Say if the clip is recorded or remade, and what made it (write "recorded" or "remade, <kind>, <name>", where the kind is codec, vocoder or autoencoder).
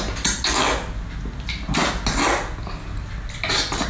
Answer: recorded